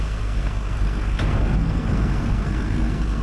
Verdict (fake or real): fake